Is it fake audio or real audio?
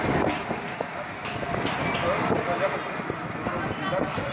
real